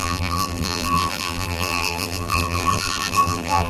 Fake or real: fake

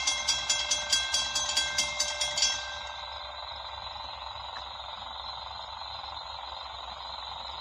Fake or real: fake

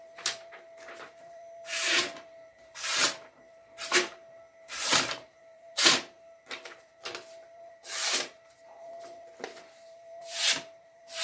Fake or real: fake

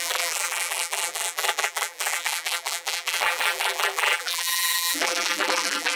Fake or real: fake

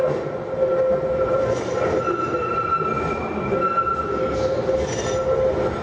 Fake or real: real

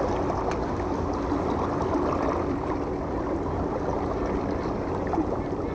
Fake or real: real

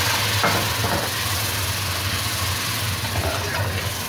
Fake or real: real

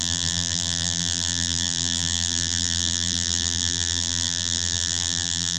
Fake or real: fake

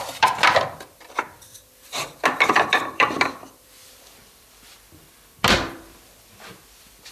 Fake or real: fake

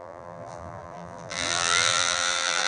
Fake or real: fake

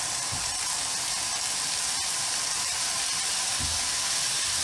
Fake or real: fake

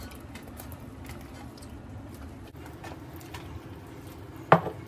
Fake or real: real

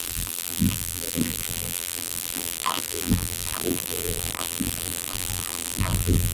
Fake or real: fake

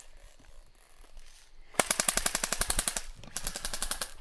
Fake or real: fake